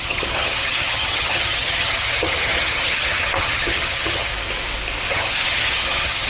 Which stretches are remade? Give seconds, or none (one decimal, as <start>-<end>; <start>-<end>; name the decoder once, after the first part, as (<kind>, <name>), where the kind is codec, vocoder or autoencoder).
0.0-4.3 (vocoder, HiFi-GAN); 5.1-6.3